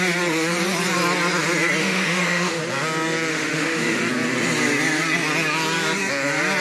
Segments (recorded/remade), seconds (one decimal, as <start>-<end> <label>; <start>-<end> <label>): 0.0-1.8 recorded; 1.8-2.6 remade; 2.6-3.3 recorded; 3.3-4.0 remade; 4.0-6.6 recorded